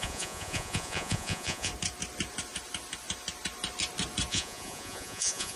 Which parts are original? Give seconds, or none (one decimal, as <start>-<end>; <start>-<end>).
1.7-4.3